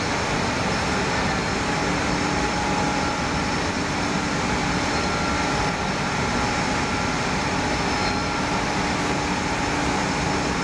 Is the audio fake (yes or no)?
no